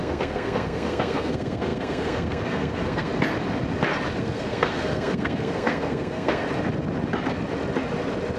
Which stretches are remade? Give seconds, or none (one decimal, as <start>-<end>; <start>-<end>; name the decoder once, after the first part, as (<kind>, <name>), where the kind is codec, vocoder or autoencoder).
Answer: 0.0-3.1 (codec, SNAC); 4.2-6.4